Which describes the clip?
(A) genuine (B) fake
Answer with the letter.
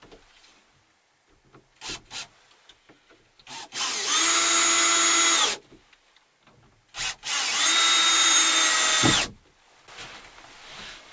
A